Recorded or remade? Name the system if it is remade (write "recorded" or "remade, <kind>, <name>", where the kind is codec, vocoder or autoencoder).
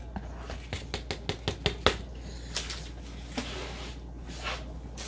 recorded